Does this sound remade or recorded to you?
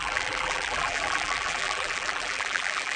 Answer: remade